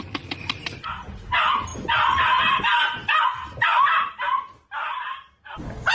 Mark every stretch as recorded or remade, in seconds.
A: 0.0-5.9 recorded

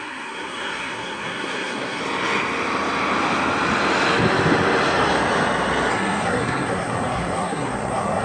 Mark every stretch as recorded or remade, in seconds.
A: 0.0-2.0 remade; 2.0-5.9 recorded; 5.9-8.2 remade

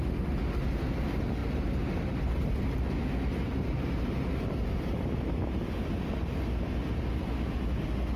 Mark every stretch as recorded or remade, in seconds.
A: 0.0-8.2 recorded

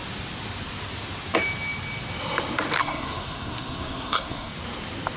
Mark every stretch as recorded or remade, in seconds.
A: 0.0-2.8 recorded; 2.8-4.5 remade; 4.5-5.2 recorded

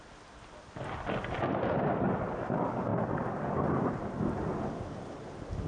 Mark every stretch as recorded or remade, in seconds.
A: 0.0-5.7 recorded

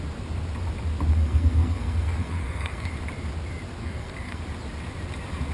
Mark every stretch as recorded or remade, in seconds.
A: 0.0-1.1 recorded; 1.1-2.9 remade; 2.9-3.8 recorded; 3.8-4.4 remade; 4.4-5.5 recorded